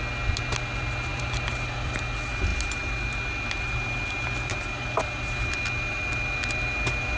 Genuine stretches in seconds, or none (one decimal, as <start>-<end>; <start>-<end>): 0.0-1.1; 2.0-7.2